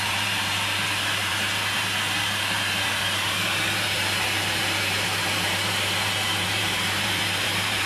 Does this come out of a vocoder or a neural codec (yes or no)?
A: yes